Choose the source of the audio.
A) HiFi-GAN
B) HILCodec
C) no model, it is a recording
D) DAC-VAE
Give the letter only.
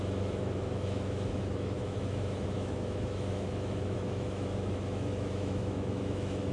D